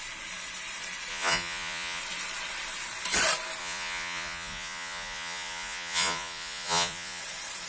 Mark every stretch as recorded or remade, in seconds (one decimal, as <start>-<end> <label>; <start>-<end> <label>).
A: 0.0-1.1 recorded; 1.1-2.0 remade; 2.0-3.6 recorded; 3.6-7.2 remade; 7.2-7.7 recorded